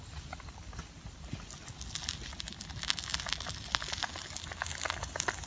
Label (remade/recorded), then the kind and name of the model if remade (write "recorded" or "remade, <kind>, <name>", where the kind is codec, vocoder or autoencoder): recorded